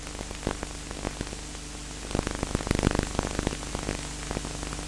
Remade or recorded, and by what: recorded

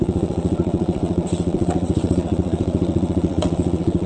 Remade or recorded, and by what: remade, vocoder, WaveNeXt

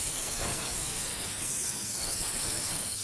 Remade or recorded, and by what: remade, codec, SNAC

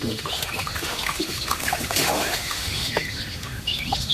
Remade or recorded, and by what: remade, autoencoder, DAC-VAE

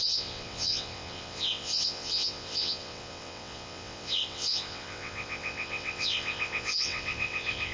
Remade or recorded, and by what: remade, vocoder, WaveNeXt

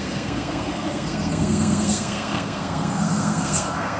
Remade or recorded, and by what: remade, codec, SNAC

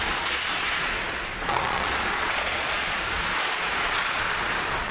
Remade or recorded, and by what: remade, vocoder, Vocos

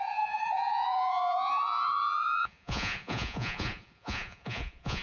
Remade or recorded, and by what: remade, vocoder, Vocos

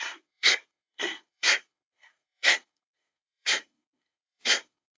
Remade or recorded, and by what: remade, codec, SNAC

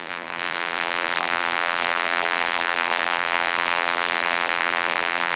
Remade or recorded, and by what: remade, vocoder, BigVGAN v2